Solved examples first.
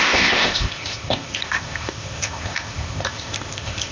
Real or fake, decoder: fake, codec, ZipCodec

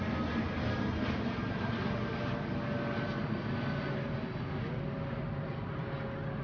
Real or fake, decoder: real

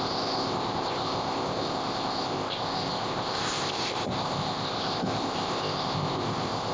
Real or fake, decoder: fake, codec, ZipCodec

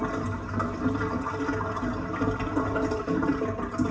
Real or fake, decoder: real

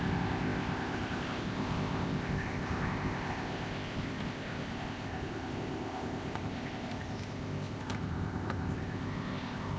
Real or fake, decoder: fake, codec, ZipCodec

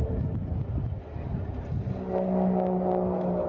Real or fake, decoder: real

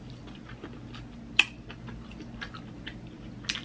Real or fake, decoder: real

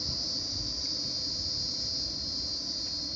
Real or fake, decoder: real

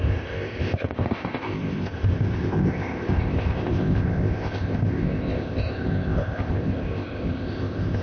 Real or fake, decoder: fake, codec, ZipCodec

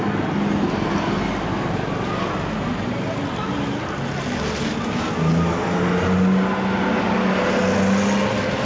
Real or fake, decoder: real